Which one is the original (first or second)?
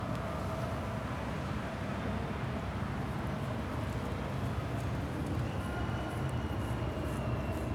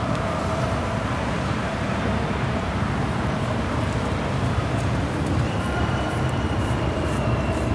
first